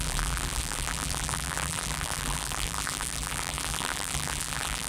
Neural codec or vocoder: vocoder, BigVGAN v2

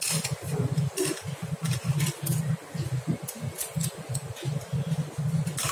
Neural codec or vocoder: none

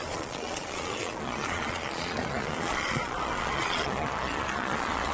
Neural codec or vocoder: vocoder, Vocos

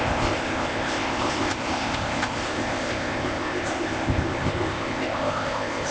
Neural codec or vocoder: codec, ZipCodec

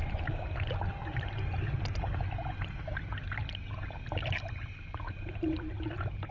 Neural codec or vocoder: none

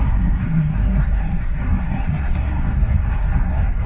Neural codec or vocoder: codec, SNAC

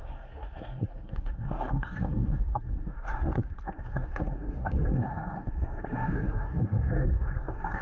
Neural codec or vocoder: codec, SNAC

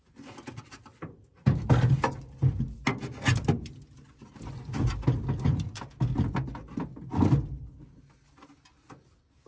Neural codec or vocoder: none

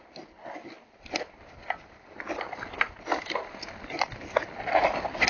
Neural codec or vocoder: none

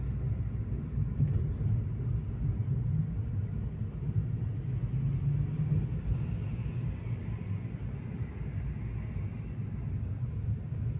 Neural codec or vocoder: none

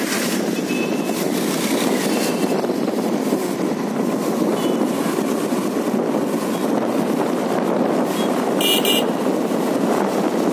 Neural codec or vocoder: none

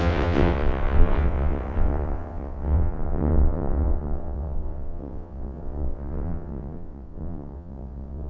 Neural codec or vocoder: vocoder, WaveNeXt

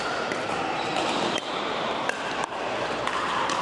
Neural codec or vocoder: vocoder, BigVGAN v2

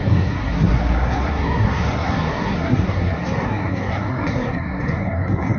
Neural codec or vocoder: codec, SNAC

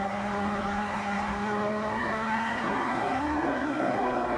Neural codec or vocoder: codec, SNAC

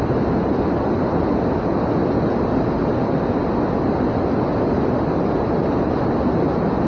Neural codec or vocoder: none